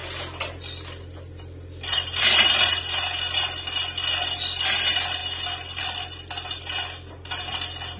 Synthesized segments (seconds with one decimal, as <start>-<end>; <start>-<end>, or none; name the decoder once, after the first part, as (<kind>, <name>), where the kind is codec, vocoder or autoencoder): none